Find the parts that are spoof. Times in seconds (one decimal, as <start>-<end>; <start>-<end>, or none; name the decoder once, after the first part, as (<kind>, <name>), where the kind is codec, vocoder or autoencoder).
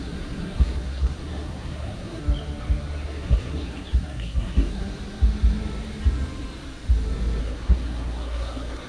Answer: 0.0-2.2 (codec, SNAC); 3.0-4.8; 7.4-8.9